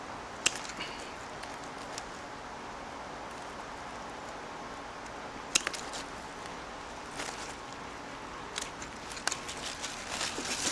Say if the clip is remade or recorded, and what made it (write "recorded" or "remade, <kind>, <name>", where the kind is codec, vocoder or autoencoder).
recorded